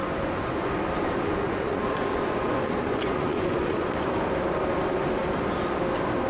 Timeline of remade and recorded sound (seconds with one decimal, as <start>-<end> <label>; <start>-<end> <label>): 0.0-0.7 remade; 0.7-1.3 recorded; 1.3-4.2 remade; 4.2-6.3 recorded